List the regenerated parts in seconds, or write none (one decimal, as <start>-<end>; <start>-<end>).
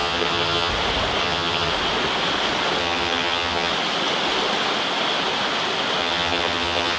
0.0-0.7; 1.2-1.7; 2.8-3.7; 6.0-7.0